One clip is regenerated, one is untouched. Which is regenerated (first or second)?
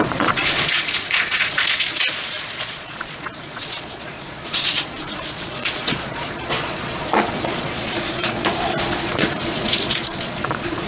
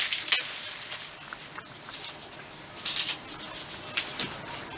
first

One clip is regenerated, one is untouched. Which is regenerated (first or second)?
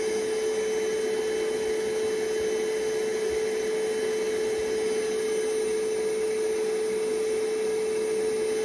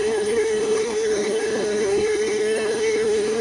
second